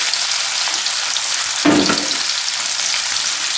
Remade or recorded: recorded